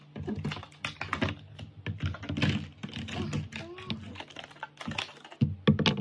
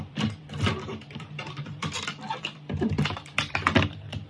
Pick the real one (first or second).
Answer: first